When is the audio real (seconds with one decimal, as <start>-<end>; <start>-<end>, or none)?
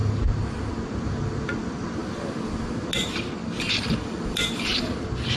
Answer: 0.0-3.0; 4.9-5.4